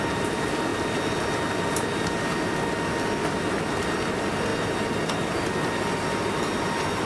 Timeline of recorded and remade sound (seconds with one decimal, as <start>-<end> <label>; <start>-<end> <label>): 0.0-7.0 recorded